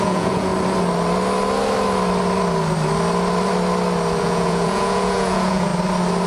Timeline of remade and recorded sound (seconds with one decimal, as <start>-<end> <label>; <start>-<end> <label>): 0.0-0.5 remade; 0.5-4.2 recorded; 4.2-5.7 remade; 5.7-6.3 recorded